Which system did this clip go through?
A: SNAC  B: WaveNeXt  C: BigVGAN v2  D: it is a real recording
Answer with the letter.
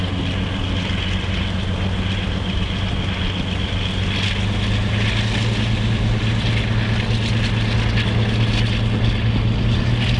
D